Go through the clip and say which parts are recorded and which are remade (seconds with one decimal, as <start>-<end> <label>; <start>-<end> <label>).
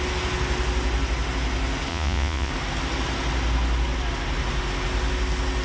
0.0-1.9 recorded; 1.9-2.5 remade; 2.5-5.6 recorded